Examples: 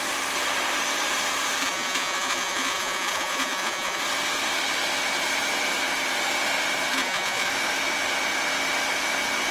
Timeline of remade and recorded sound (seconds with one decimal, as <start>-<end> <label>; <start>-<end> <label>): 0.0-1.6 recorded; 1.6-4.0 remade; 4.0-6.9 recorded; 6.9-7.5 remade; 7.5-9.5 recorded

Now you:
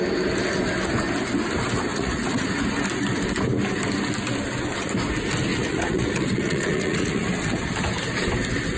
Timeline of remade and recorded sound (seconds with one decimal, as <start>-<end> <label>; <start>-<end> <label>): 0.0-1.9 recorded; 1.9-2.6 remade; 2.6-5.5 recorded; 5.5-7.7 remade; 7.7-8.8 recorded

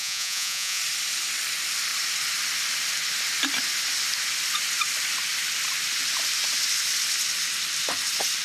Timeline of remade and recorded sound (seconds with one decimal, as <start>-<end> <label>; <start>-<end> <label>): 0.0-0.8 remade; 0.8-8.4 recorded

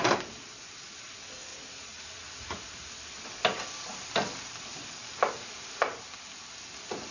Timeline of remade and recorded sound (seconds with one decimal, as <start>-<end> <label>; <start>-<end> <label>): 0.0-1.5 recorded; 1.5-2.9 remade; 2.9-7.1 recorded

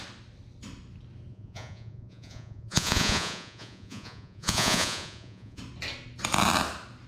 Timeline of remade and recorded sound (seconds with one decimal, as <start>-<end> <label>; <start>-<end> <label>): 0.0-1.3 recorded; 1.3-5.6 remade; 5.6-7.1 recorded

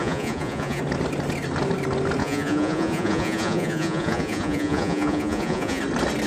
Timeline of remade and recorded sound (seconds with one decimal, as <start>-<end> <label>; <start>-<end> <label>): 0.0-0.8 remade; 0.8-2.2 recorded; 2.2-5.8 remade; 5.8-6.3 recorded